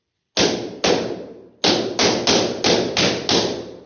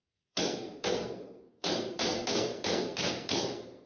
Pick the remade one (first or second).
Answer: second